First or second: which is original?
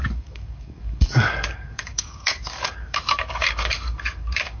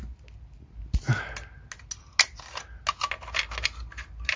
second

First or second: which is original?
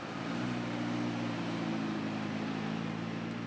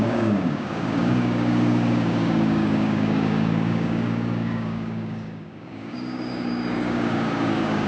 first